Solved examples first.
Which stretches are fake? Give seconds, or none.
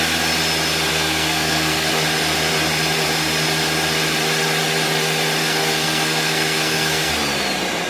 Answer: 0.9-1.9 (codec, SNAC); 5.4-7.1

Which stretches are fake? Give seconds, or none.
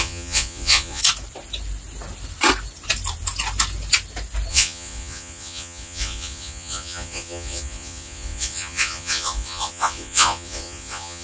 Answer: 0.0-1.0 (vocoder, Vocos); 4.5-11.2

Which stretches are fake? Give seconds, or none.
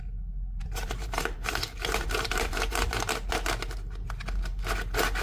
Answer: 0.6-3.1 (vocoder, BigVGAN v2)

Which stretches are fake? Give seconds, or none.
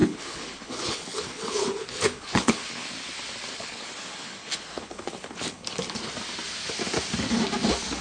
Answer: 0.0-2.9 (codec, HILCodec); 3.5-6.1